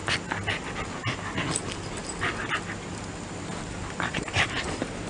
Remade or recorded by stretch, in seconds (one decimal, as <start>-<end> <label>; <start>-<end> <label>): 0.0-3.1 recorded; 3.1-5.1 remade